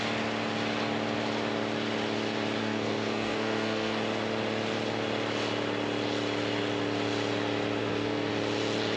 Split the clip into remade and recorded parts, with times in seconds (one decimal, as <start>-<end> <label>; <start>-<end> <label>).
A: 0.0-2.6 recorded; 2.6-4.0 remade; 4.0-7.8 recorded; 7.8-8.3 remade; 8.3-9.0 recorded